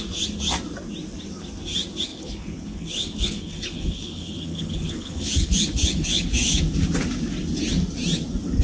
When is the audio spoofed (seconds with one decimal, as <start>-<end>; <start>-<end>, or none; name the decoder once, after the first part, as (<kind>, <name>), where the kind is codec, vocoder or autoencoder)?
2.1-6.6 (codec, HILCodec)

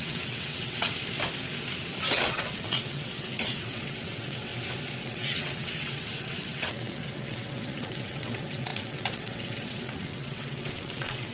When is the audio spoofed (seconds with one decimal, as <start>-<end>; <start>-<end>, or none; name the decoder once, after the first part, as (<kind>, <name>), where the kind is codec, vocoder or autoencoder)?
0.0-1.0 (vocoder, WaveNeXt); 2.1-4.5; 5.0-11.3

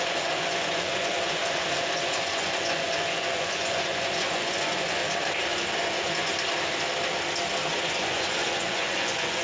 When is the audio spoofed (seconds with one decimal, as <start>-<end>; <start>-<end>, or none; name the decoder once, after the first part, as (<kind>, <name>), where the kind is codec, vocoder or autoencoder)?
0.0-5.0 (vocoder, Vocos); 5.8-6.3; 7.7-9.4

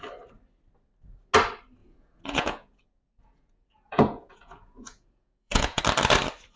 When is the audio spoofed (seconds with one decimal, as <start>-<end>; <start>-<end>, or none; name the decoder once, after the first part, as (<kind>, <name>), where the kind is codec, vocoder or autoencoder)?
1.8-5.8 (vocoder, Vocos)

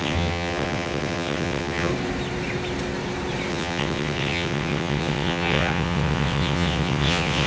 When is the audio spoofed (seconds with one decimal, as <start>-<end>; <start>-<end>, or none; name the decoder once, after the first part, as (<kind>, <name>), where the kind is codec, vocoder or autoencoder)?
0.0-1.9 (vocoder, WaveNeXt); 3.5-7.5

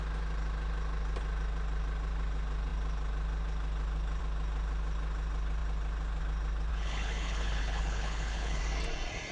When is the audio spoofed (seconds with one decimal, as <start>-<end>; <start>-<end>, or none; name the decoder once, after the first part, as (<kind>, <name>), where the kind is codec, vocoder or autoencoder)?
6.7-8.6 (codec, HILCodec)

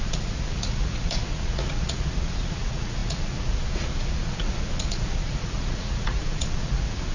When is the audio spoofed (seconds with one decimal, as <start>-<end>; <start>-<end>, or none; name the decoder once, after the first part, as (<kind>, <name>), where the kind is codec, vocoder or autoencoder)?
0.0-7.1 (vocoder, Vocos)